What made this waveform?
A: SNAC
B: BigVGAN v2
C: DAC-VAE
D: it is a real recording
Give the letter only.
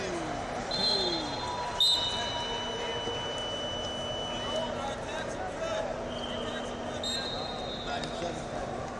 D